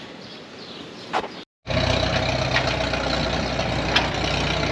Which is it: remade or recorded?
recorded